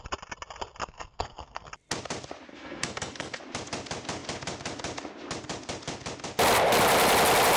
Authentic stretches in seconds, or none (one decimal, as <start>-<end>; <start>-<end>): 0.0-0.8; 1.7-2.5; 3.4-7.6